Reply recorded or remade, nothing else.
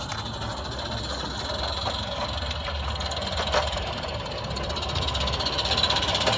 recorded